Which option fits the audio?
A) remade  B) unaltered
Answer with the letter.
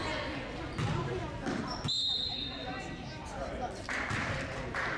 B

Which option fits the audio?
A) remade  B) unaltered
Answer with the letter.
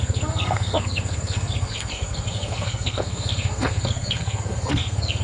A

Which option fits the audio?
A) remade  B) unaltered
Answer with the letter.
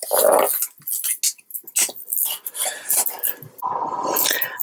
B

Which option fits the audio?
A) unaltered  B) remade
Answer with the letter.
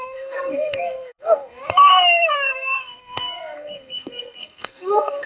B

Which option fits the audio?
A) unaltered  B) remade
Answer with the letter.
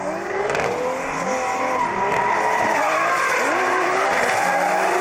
A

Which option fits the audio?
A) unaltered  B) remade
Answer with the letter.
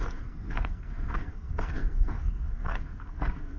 B